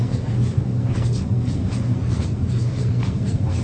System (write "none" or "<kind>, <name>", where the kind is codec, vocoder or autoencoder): codec, SNAC